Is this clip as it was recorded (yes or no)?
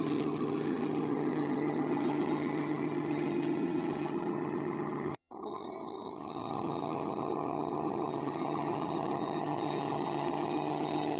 no